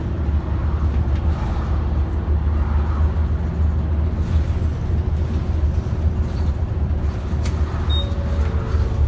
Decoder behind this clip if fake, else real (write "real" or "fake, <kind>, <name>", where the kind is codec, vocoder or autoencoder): real